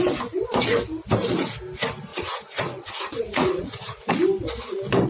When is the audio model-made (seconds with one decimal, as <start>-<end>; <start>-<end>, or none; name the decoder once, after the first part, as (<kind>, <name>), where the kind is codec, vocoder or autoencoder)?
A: 2.1-4.1 (vocoder, Vocos)